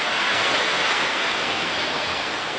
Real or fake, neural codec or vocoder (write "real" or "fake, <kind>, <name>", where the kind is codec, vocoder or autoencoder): fake, codec, SNAC